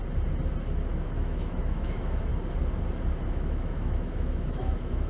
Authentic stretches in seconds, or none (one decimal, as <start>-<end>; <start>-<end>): 0.0-0.9; 2.3-3.2